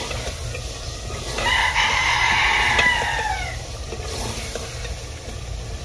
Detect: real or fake real